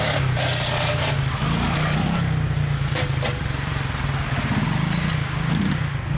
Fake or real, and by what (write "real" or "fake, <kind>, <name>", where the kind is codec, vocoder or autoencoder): real